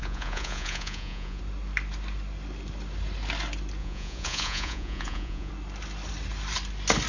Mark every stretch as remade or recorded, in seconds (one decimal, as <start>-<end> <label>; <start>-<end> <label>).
0.0-1.4 remade; 1.4-3.8 recorded; 3.8-5.5 remade; 5.5-7.1 recorded